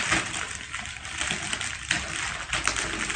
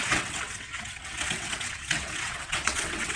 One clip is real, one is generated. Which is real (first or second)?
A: first